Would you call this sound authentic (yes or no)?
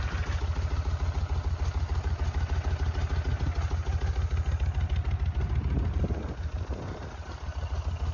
yes